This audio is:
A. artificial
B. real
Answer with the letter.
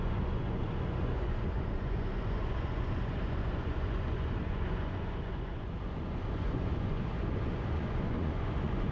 A